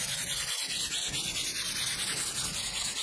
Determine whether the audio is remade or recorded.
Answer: recorded